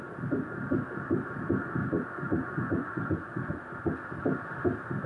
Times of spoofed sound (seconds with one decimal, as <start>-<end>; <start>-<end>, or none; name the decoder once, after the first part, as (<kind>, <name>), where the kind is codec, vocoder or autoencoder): 1.8-3.5 (vocoder, Vocos)